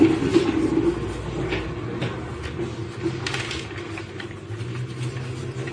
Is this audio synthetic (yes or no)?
no